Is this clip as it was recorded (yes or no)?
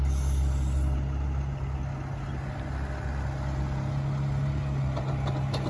yes